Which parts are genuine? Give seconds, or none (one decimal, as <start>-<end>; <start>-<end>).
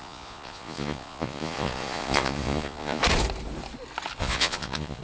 3.0-4.2